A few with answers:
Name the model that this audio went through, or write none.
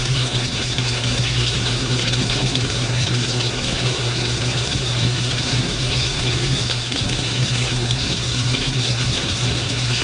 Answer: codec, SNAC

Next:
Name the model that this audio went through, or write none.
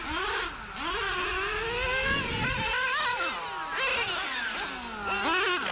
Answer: none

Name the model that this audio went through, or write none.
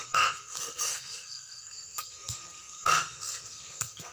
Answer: codec, SNAC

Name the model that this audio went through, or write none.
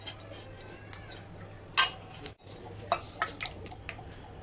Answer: none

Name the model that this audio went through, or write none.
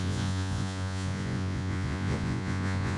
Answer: vocoder, Vocos